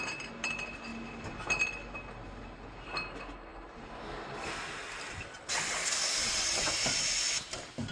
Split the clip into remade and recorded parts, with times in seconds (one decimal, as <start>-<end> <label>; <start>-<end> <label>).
0.0-6.2 recorded; 6.2-6.7 remade; 6.7-7.9 recorded